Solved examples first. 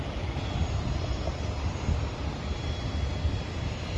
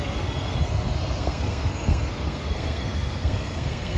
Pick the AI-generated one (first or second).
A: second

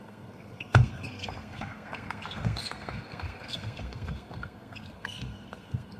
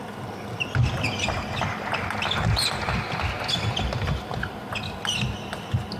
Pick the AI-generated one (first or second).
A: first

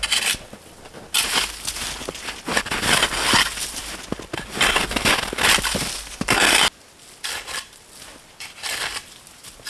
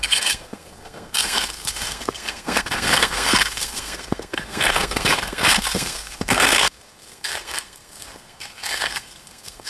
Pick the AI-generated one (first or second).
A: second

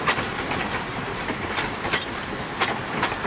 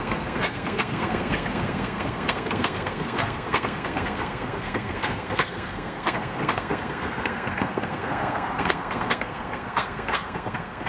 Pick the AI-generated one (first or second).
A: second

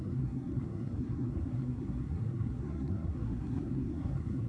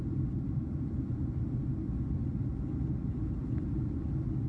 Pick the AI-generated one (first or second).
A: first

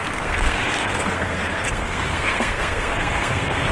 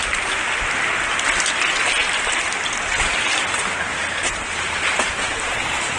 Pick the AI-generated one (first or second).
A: first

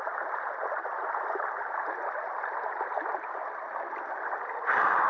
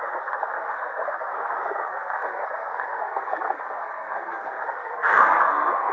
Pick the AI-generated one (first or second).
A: second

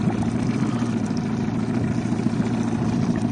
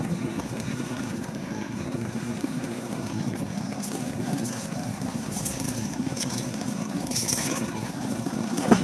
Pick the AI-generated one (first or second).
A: second